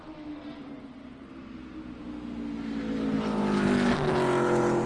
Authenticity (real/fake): real